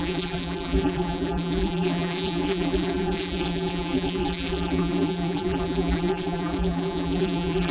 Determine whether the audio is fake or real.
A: fake